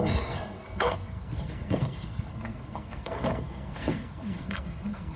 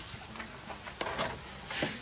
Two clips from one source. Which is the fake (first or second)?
first